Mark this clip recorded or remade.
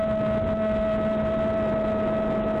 recorded